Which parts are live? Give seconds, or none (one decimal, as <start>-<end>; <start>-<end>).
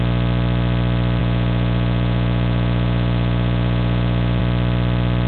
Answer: 0.0-1.2; 4.4-5.3